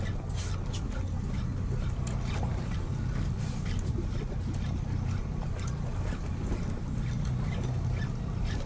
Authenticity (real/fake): real